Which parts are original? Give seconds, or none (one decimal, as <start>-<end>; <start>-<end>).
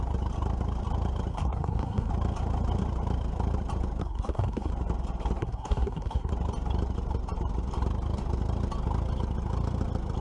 0.0-1.3; 2.1-4.0; 4.7-5.4; 6.3-10.2